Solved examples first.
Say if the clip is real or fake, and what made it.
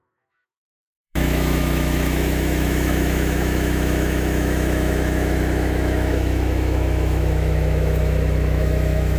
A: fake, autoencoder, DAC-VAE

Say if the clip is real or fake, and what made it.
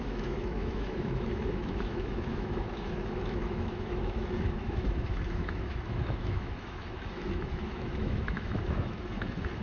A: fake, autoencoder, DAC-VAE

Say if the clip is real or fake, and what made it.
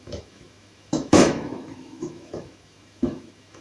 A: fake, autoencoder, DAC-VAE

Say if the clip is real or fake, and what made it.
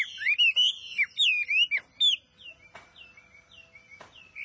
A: real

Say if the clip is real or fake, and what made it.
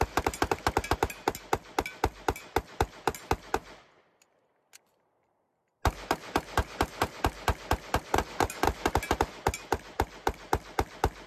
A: real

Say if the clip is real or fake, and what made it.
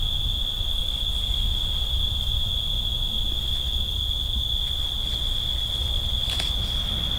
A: real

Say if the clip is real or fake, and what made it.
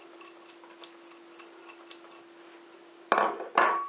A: real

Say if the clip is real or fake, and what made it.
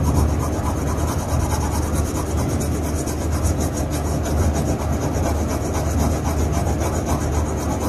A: real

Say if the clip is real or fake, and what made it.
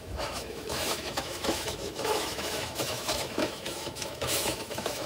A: fake, autoencoder, DAC-VAE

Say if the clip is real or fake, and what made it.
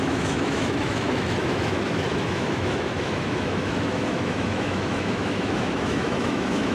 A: fake, autoencoder, DAC-VAE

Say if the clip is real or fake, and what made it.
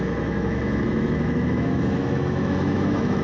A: fake, autoencoder, DAC-VAE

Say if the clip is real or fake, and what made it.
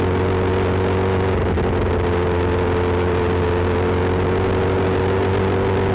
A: real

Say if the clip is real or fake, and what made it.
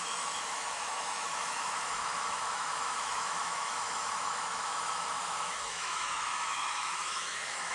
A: fake, autoencoder, DAC-VAE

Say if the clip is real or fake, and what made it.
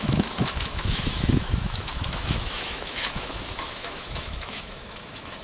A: fake, autoencoder, DAC-VAE